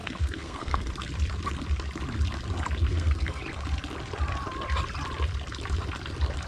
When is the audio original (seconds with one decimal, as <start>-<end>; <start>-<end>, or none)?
0.9-2.9; 3.4-6.5